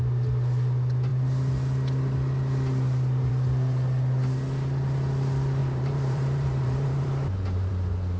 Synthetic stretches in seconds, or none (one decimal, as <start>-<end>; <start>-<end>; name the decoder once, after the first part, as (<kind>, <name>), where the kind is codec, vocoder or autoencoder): 5.6-7.7 (vocoder, BigVGAN v2)